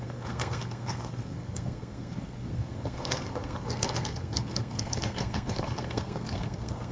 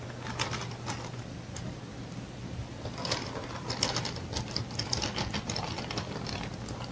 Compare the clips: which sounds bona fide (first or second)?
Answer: second